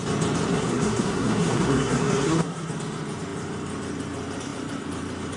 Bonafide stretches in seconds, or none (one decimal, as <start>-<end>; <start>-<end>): 0.0-0.5; 2.7-5.4